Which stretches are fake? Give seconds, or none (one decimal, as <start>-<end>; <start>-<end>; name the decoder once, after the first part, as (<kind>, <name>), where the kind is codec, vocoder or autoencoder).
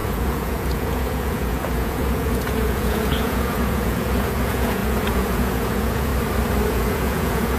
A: 0.0-6.1 (vocoder, Vocos); 6.7-7.6